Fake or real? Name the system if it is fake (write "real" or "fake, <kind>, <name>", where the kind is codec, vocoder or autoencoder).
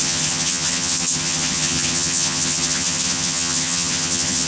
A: fake, vocoder, HiFi-GAN